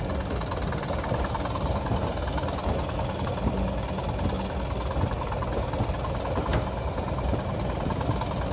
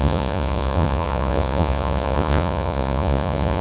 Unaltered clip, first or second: first